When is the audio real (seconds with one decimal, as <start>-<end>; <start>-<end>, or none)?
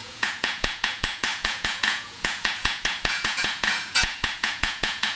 none